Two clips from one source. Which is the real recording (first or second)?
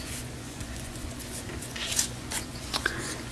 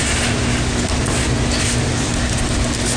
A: second